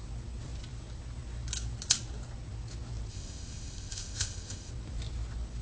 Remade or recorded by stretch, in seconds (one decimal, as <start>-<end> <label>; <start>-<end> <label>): 0.0-3.1 recorded; 3.1-4.7 remade; 4.7-5.6 recorded